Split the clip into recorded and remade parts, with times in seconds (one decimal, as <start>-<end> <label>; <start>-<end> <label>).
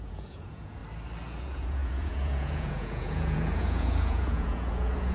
0.0-0.8 remade; 0.8-1.4 recorded; 1.4-5.1 remade